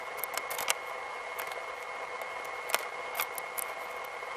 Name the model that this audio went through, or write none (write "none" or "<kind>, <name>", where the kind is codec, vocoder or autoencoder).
none